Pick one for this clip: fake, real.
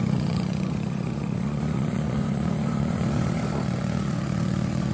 fake